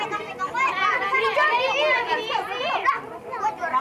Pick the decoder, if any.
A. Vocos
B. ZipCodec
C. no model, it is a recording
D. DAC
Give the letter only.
C